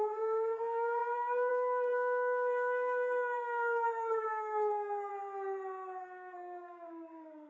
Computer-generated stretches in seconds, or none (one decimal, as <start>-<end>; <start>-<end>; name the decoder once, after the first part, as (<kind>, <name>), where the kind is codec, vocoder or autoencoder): 0.0-5.1 (codec, SNAC); 6.0-7.5